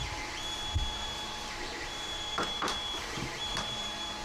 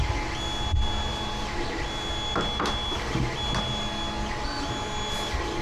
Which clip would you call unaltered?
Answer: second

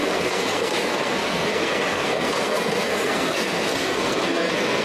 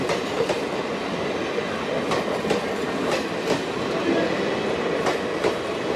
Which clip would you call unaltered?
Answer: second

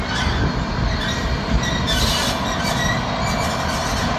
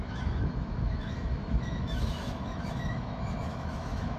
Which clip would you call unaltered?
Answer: first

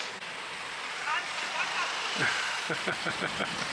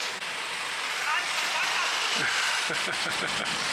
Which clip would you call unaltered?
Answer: second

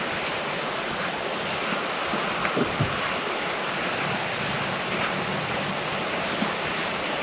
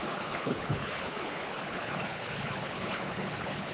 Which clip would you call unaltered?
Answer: first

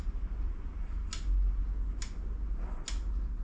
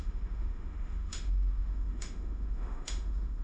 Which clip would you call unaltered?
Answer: first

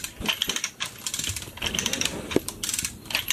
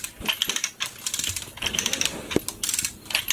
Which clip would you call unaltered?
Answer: second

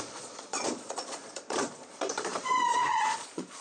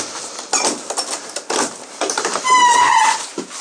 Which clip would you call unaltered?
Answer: second